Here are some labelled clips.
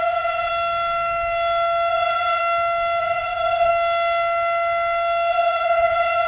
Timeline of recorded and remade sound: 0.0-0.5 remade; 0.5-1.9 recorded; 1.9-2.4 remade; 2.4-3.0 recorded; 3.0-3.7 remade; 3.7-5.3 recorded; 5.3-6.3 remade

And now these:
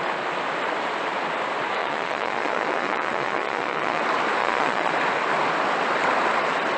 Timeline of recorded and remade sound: 0.0-1.8 recorded; 1.8-4.0 remade; 4.0-4.4 recorded; 4.4-4.9 remade; 4.9-6.8 recorded

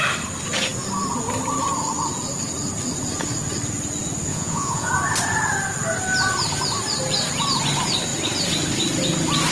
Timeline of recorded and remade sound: 0.0-4.3 recorded; 4.3-4.9 remade; 4.9-9.5 recorded

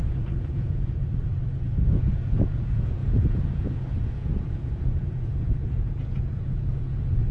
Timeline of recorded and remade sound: 0.0-1.0 remade; 1.0-1.6 recorded; 1.6-7.3 remade

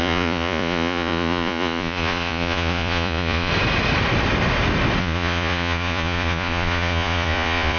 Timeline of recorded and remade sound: 0.0-3.5 remade; 3.5-5.0 recorded; 5.0-7.8 remade

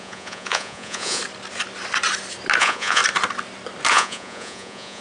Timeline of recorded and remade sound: 0.0-1.2 remade; 1.2-2.6 recorded; 2.6-3.0 remade; 3.0-3.9 recorded; 3.9-5.0 remade